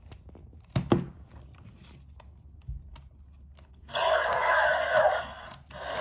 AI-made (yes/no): no